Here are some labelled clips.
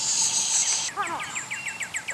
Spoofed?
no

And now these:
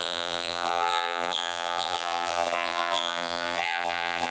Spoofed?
yes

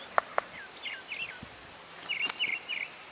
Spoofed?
no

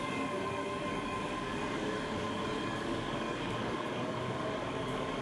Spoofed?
yes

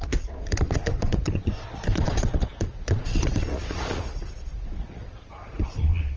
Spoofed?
yes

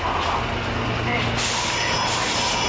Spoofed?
no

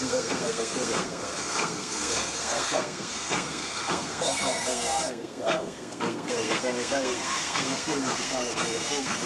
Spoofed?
yes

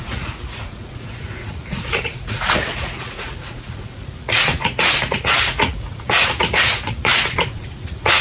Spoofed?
yes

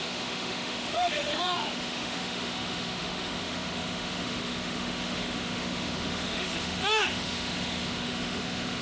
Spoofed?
yes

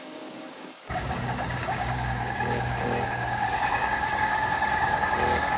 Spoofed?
yes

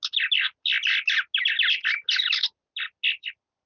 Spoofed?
no